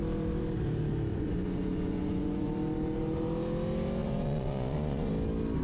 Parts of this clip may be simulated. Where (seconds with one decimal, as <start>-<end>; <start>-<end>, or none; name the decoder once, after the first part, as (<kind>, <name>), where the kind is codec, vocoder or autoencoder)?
1.1-2.5 (vocoder, Vocos); 4.0-5.1